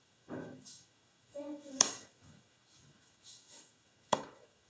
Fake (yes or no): yes